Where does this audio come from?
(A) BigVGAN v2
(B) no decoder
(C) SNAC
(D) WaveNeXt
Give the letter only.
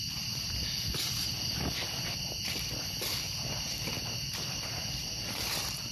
B